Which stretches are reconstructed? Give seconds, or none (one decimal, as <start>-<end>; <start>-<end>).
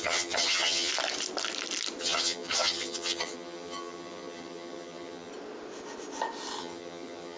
0.0-0.9; 2.0-5.3; 6.6-7.4